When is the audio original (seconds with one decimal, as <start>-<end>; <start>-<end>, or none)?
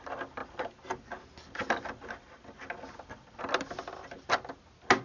0.0-5.0